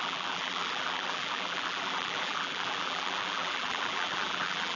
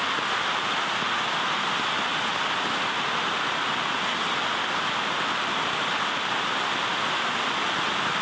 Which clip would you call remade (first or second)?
first